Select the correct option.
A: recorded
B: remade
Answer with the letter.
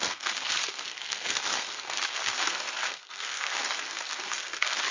B